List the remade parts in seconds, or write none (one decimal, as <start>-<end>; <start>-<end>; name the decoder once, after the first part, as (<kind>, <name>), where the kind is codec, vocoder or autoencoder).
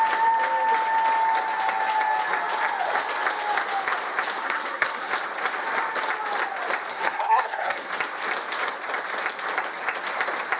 4.4-5.1 (codec, SNAC); 6.9-7.9